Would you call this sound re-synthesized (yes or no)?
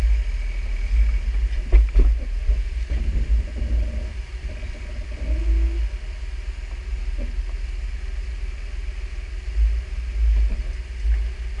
no